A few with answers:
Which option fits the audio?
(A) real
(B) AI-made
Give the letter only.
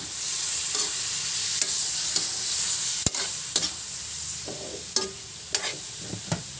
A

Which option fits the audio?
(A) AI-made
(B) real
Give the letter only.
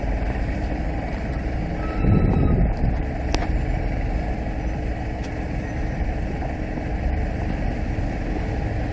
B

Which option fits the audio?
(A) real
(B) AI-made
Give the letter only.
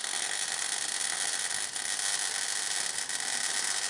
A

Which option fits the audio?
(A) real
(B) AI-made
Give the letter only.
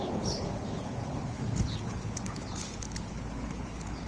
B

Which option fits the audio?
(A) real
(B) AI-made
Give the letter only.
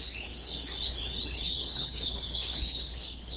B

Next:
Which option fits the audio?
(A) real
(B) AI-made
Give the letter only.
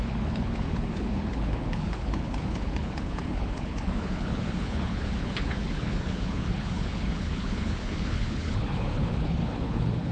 B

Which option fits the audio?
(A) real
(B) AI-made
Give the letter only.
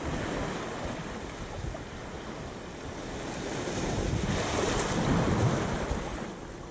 A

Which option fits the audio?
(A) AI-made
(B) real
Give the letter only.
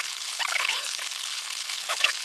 A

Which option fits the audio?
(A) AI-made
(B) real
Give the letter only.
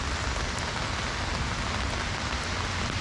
B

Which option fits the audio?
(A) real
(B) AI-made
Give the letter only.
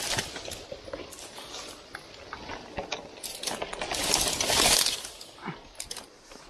A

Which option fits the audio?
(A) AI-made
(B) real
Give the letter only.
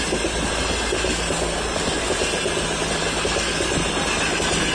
B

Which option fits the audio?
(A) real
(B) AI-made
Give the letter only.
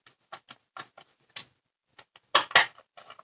A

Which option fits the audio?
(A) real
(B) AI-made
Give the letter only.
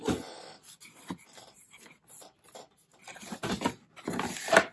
A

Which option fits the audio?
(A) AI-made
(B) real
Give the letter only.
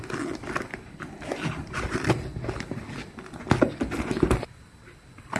B